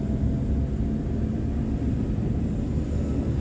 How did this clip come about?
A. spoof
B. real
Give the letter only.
B